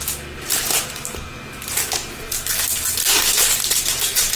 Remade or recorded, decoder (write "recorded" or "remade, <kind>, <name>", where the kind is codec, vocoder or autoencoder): recorded